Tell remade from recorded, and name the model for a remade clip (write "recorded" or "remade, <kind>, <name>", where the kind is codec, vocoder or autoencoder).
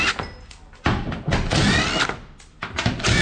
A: recorded